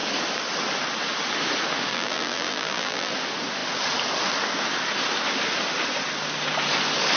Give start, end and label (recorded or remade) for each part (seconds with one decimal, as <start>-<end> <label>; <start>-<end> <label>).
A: 0.0-1.9 recorded; 1.9-3.1 remade; 3.1-7.2 recorded